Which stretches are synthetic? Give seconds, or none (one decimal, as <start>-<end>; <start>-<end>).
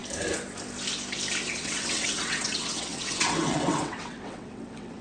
1.5-5.0